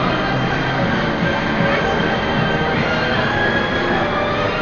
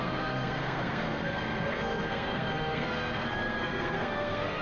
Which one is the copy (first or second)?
second